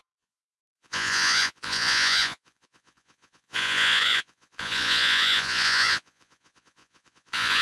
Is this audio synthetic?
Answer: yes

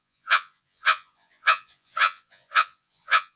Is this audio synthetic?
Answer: yes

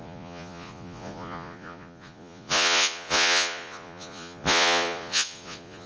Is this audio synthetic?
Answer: yes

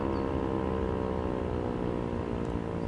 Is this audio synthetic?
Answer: no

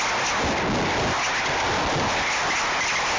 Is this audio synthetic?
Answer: no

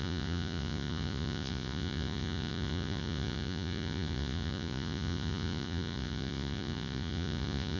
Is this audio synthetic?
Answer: yes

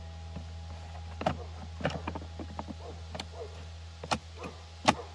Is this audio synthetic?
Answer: no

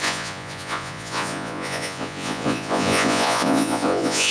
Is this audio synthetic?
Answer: yes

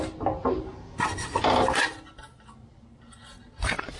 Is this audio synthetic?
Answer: no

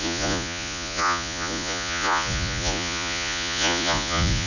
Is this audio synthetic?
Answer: yes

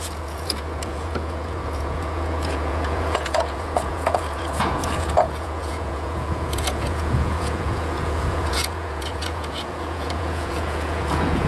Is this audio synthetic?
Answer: yes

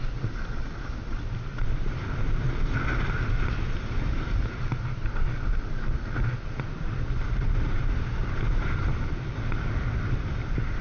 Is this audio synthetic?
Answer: no